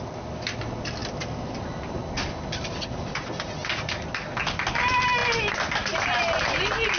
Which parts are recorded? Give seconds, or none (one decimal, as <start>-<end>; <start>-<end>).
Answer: 0.0-7.0